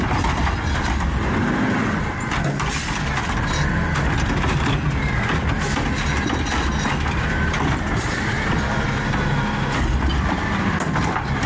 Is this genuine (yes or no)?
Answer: yes